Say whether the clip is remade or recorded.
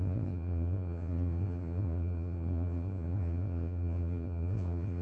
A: remade